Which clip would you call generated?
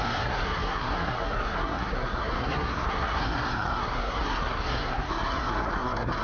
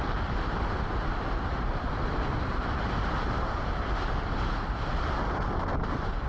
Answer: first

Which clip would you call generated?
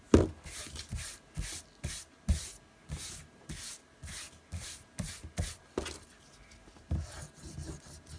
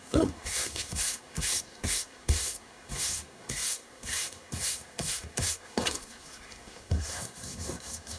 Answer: second